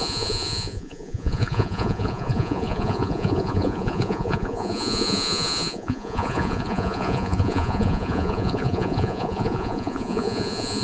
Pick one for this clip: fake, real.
fake